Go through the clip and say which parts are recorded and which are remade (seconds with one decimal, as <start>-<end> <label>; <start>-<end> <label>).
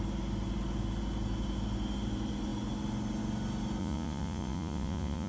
0.0-3.8 recorded; 3.8-5.3 remade